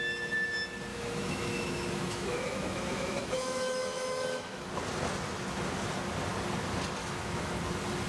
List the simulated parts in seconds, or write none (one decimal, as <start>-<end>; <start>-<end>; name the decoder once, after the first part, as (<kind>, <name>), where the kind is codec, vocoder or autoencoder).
0.9-4.7 (autoencoder, DAC-VAE); 7.0-7.6